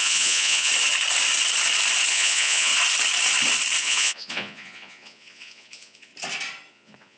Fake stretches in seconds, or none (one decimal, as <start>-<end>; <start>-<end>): 0.0-0.7; 2.1-2.7; 3.8-6.1; 6.7-7.2